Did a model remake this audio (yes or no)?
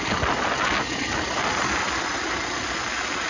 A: no